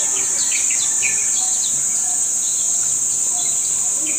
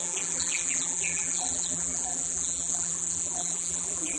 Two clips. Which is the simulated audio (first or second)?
second